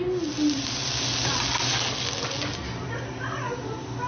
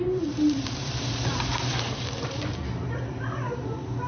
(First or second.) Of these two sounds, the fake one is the second